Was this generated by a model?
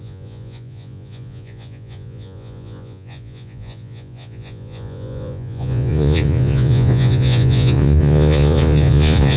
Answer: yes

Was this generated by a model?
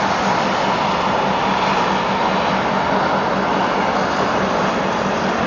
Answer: no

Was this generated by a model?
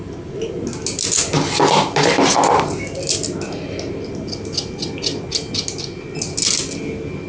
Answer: no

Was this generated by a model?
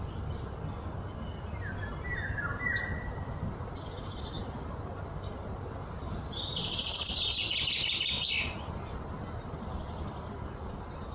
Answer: no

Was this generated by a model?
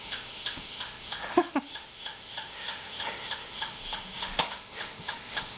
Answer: yes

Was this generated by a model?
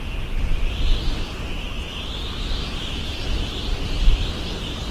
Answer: no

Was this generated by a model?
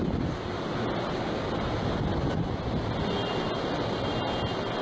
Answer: no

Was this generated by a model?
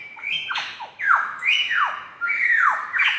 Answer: yes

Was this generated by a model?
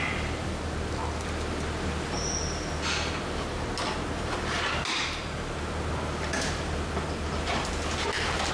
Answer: no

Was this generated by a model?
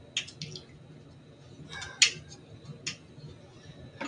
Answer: no